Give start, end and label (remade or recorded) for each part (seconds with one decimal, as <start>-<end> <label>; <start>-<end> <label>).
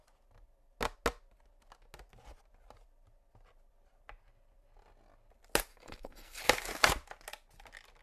0.0-5.7 recorded; 5.7-6.4 remade; 6.4-8.0 recorded